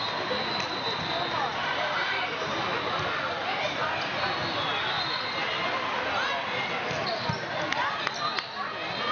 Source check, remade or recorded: recorded